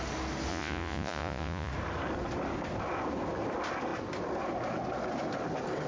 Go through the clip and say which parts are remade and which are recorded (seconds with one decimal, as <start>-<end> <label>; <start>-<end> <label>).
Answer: 0.0-0.5 recorded; 0.5-1.7 remade; 1.7-5.9 recorded